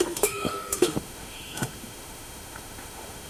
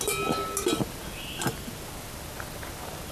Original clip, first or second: second